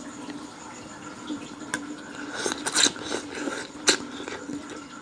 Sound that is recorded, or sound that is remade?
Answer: recorded